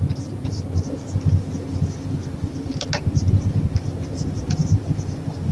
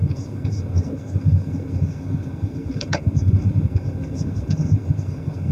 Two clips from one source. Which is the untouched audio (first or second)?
first